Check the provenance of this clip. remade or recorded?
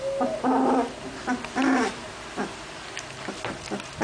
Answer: recorded